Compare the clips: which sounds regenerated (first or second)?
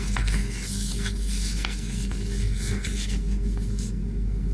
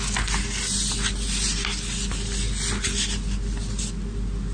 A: first